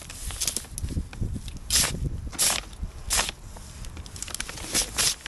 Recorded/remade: recorded